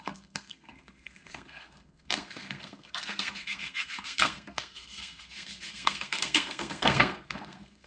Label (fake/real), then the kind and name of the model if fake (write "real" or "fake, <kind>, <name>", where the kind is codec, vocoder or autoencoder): fake, codec, SNAC